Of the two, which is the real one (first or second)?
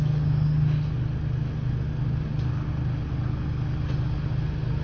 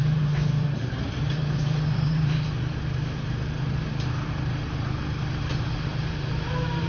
first